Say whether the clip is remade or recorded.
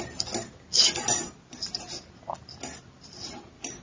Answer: recorded